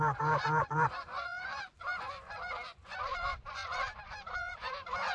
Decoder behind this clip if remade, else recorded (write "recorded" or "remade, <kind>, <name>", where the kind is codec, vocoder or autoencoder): remade, vocoder, Vocos